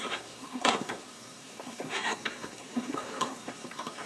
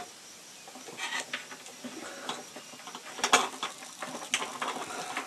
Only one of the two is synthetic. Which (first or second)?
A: first